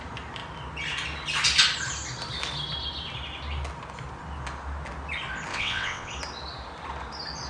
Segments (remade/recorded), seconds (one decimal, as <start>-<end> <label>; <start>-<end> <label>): 0.0-5.5 recorded; 5.5-6.1 remade; 6.1-7.5 recorded